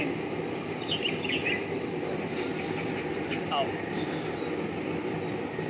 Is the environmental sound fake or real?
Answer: real